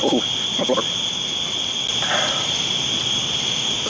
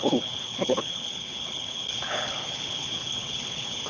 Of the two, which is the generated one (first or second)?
second